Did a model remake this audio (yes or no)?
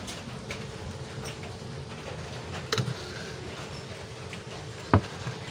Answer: no